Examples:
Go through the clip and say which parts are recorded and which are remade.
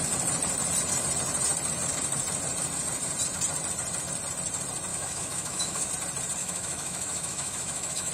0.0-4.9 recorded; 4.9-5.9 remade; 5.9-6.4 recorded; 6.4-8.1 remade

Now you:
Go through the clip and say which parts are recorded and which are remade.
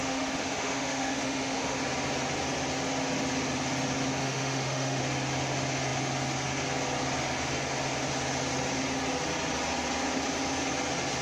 0.0-1.8 remade; 1.8-4.2 recorded; 4.2-5.0 remade; 5.0-11.2 recorded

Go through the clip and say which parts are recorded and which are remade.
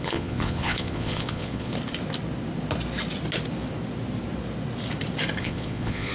0.0-1.7 remade; 1.7-5.4 recorded; 5.4-6.1 remade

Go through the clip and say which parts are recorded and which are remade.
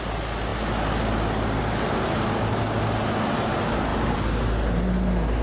0.0-5.4 recorded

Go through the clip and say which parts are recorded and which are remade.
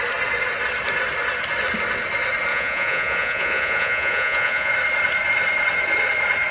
0.0-2.5 recorded; 2.5-4.7 remade; 4.7-6.5 recorded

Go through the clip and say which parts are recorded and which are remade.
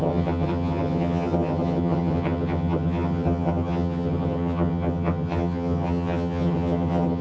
0.0-7.2 remade